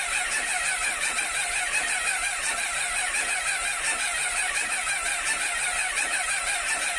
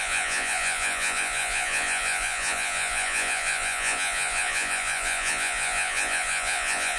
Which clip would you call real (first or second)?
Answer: first